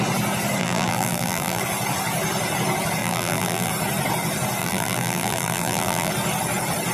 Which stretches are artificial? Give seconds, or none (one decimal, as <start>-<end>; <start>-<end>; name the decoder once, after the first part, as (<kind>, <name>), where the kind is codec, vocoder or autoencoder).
0.6-1.6 (vocoder, BigVGAN v2); 3.0-3.7; 4.6-6.1